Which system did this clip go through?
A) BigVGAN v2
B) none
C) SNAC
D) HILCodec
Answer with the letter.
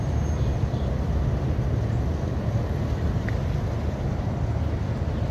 B